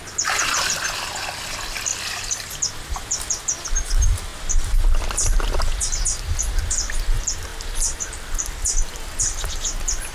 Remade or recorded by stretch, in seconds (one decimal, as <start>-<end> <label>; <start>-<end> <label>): 0.0-7.5 recorded; 7.5-9.6 remade; 9.6-10.1 recorded